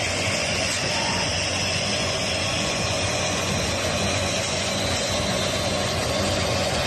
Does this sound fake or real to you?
fake